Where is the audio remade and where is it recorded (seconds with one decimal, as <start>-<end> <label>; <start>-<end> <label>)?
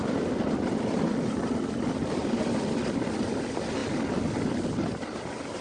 0.0-2.2 remade; 2.2-2.8 recorded; 2.8-3.8 remade; 3.8-5.6 recorded